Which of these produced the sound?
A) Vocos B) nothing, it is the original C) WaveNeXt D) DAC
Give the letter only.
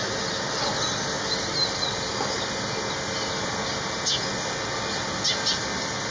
B